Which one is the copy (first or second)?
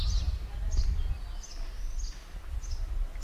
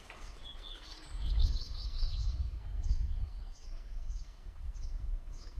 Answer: second